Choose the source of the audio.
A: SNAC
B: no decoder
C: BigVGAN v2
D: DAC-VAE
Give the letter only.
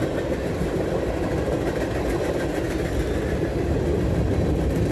B